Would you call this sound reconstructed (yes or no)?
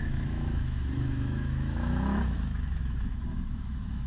yes